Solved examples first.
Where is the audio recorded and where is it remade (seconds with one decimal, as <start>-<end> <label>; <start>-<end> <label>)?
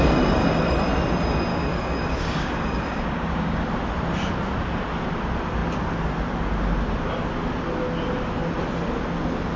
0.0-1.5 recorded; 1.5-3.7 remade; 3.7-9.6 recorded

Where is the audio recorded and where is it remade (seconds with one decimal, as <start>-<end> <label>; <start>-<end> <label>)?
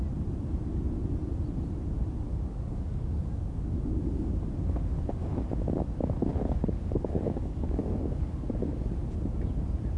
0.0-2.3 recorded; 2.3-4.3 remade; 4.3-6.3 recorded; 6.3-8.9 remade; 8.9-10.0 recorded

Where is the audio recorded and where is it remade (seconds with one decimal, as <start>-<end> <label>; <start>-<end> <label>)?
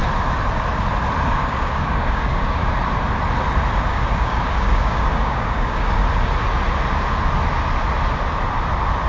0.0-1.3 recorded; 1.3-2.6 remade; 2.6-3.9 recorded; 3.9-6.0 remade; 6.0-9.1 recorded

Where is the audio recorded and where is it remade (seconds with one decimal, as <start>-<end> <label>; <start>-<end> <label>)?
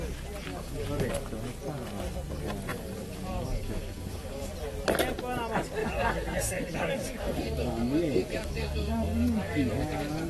0.0-0.5 recorded; 0.5-1.1 remade; 1.1-2.7 recorded; 2.7-4.5 remade; 4.5-5.8 recorded; 5.8-10.3 remade